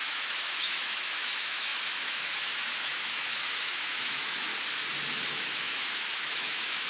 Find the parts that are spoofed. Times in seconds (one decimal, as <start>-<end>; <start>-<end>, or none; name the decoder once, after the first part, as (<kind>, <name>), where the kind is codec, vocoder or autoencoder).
0.0-4.5 (autoencoder, DAC-VAE); 5.3-6.9